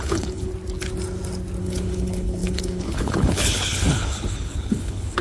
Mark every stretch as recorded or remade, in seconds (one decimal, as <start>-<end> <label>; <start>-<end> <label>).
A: 0.0-0.5 remade; 0.5-1.6 recorded; 1.6-5.2 remade